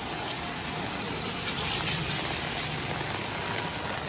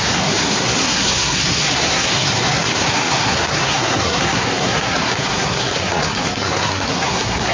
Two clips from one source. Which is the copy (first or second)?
second